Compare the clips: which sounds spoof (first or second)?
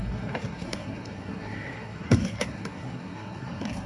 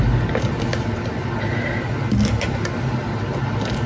first